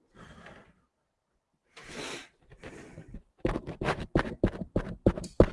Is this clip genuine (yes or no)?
no